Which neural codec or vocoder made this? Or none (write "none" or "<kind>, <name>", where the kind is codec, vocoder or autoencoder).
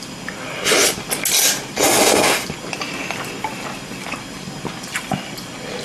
none